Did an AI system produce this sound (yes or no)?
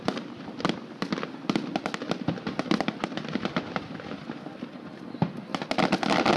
no